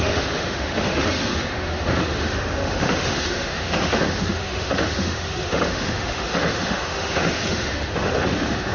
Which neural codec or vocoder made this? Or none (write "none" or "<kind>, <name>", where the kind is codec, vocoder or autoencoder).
autoencoder, DAC-VAE